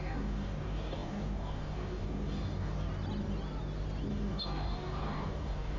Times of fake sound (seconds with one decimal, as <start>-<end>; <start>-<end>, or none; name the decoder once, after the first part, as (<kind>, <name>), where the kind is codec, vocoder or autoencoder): 0.0-2.9 (codec, DAC); 4.1-5.8